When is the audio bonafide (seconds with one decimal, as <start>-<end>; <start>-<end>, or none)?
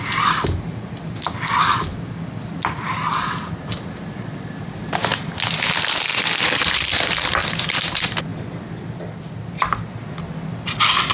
0.0-11.1